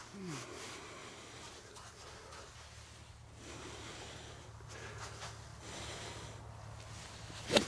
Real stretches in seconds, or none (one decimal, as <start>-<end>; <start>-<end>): 0.0-7.7